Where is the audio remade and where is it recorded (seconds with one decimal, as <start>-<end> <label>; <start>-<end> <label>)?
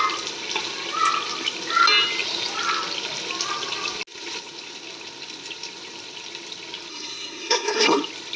0.0-6.9 recorded; 6.9-8.0 remade; 8.0-8.4 recorded